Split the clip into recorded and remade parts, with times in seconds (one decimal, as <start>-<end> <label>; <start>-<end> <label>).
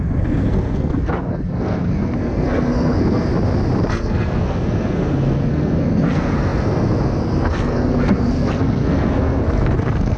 0.0-3.3 remade; 3.3-3.9 recorded; 3.9-10.2 remade